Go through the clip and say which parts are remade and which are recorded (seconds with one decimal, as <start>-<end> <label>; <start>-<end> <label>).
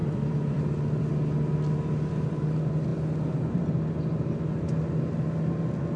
0.0-1.1 remade; 1.1-6.0 recorded